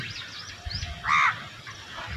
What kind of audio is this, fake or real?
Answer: real